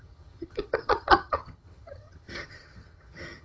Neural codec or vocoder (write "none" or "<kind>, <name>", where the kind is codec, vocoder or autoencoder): vocoder, HiFi-GAN